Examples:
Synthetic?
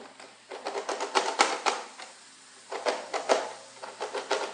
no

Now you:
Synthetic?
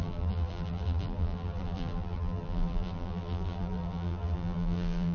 yes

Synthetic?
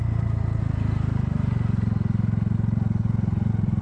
no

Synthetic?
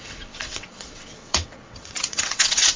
yes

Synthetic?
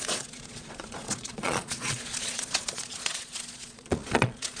yes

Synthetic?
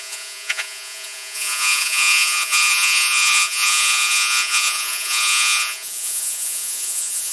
yes